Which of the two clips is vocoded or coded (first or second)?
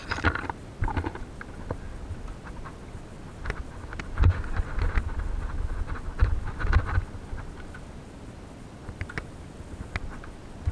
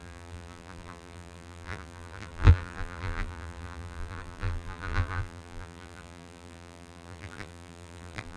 second